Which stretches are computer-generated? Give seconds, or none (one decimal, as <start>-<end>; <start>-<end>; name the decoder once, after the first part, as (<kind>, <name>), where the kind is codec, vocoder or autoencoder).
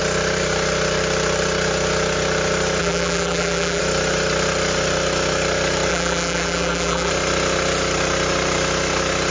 2.8-3.8 (vocoder, BigVGAN v2); 5.9-7.1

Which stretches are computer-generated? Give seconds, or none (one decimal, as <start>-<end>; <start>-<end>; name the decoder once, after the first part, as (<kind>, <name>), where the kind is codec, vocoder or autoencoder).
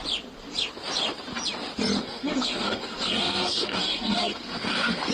2.0-5.1 (codec, SNAC)